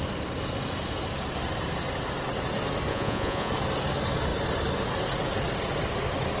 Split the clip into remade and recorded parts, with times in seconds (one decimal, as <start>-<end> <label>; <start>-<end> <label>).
0.0-2.9 recorded; 2.9-3.5 remade; 3.5-6.4 recorded